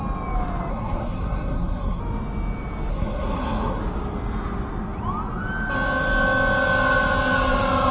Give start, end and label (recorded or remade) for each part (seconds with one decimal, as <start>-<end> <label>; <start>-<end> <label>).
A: 0.0-0.7 recorded; 0.7-2.0 remade; 2.0-2.9 recorded; 2.9-3.8 remade; 3.8-7.9 recorded